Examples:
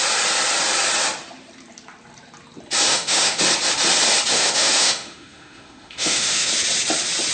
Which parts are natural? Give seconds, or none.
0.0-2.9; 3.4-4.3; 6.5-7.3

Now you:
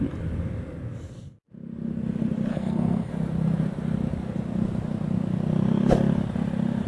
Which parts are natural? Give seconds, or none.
0.0-2.5; 3.1-6.9